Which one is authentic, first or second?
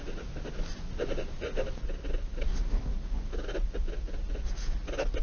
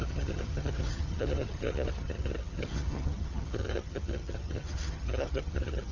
first